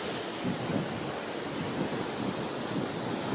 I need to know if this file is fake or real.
real